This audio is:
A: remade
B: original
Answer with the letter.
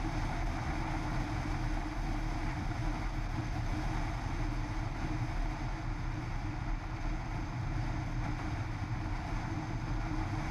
B